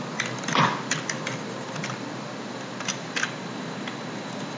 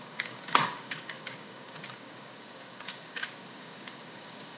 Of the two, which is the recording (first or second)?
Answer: first